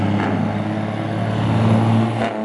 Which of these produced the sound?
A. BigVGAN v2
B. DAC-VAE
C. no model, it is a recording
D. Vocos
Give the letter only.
C